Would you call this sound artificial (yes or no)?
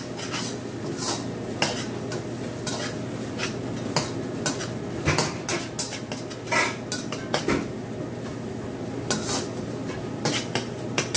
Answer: no